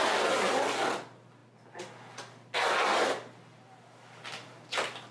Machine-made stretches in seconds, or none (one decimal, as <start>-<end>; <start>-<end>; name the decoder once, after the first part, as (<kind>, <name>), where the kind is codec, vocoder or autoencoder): none